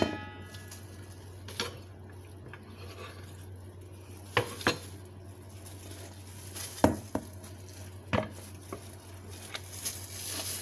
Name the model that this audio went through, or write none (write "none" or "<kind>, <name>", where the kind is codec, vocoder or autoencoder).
none